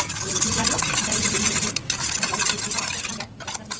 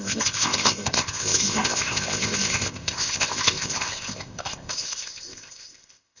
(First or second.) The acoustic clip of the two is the first